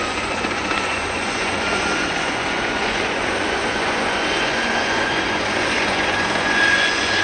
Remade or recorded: remade